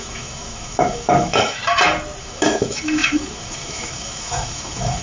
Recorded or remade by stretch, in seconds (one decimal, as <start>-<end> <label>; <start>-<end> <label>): 0.0-1.6 remade; 1.6-2.2 recorded; 2.2-5.0 remade